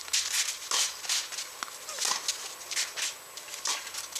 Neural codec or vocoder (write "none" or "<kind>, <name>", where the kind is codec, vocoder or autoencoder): none